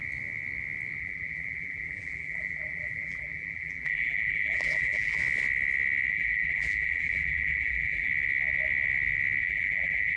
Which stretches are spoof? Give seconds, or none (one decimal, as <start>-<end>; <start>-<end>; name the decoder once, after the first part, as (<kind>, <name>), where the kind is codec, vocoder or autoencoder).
1.0-5.2 (vocoder, BigVGAN v2); 6.1-8.1; 9.4-10.2